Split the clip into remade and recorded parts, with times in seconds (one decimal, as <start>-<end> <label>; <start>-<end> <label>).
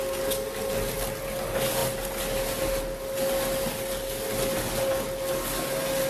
0.0-6.1 recorded